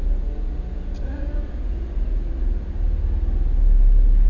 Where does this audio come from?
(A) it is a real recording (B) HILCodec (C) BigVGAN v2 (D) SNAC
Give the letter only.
A